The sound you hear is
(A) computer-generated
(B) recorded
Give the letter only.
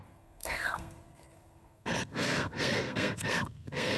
A